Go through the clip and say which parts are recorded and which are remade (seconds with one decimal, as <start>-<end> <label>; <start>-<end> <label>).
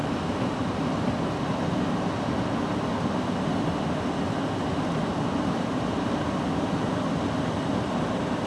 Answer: 0.0-0.8 remade; 0.8-8.5 recorded